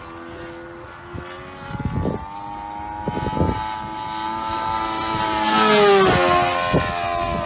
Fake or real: real